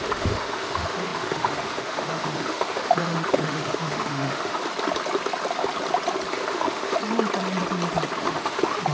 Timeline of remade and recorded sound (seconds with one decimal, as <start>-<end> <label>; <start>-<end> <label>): 0.0-4.6 remade; 4.6-6.3 recorded; 6.3-7.0 remade; 7.0-8.2 recorded; 8.2-8.9 remade